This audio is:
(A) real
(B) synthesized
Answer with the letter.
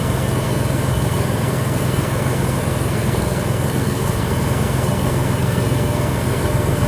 B